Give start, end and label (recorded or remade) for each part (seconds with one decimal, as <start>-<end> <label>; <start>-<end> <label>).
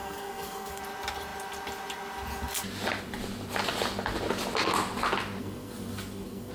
0.0-0.8 remade; 0.8-5.4 recorded; 5.4-6.5 remade